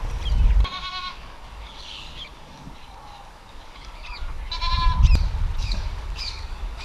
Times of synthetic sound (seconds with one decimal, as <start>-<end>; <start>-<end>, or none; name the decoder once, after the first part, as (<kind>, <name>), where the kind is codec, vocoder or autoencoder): 0.6-4.5 (codec, DAC); 5.6-6.8